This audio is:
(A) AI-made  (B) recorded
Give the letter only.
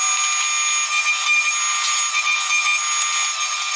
B